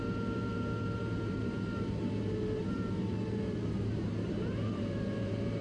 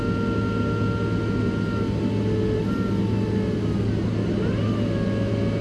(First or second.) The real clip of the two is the second